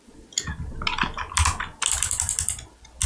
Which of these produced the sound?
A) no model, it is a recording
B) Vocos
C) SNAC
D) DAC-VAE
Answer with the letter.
A